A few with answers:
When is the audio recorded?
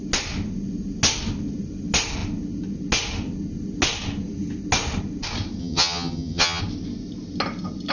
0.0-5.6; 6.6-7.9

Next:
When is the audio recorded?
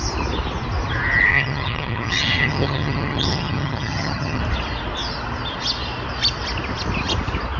0.0-1.3; 4.4-7.6